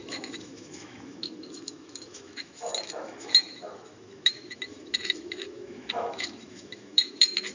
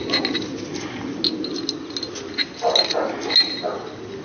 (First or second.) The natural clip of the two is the second